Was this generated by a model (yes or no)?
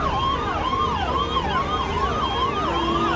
no